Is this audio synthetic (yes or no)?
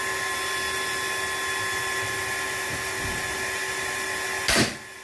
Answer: no